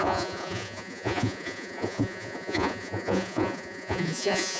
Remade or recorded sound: remade